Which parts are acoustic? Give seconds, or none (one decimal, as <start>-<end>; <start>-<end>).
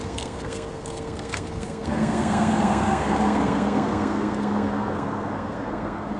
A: none